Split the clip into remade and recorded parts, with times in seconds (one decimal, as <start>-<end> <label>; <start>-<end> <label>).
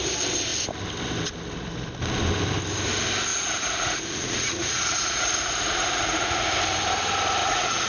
0.0-3.3 recorded; 3.3-6.5 remade; 6.5-7.4 recorded; 7.4-7.9 remade